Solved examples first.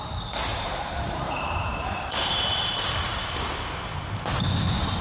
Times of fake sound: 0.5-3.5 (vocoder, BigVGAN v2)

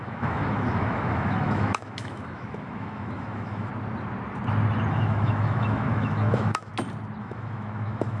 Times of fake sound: 0.0-3.7 (autoencoder, DAC-VAE); 4.9-6.7; 7.2-8.2

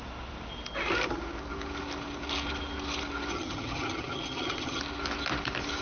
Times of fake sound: 3.3-4.8 (vocoder, HiFi-GAN)

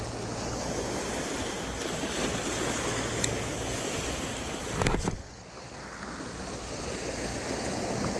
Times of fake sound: none

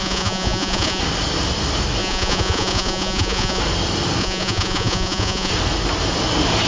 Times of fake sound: 0.0-1.0 (vocoder, Vocos); 2.0-3.6; 4.2-5.5

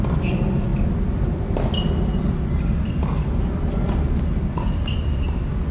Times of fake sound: none

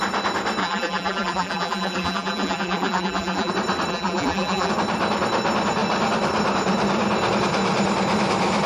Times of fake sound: 0.6-3.5 (vocoder, BigVGAN v2); 3.9-4.7

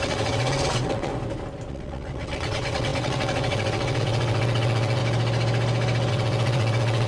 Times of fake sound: 0.0-1.1 (vocoder, WaveNeXt); 1.7-5.0; 6.1-7.1